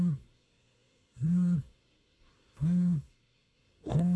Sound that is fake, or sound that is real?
fake